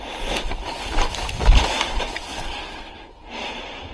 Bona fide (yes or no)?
yes